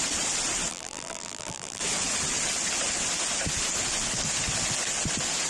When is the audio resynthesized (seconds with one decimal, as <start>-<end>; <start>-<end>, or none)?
0.7-1.8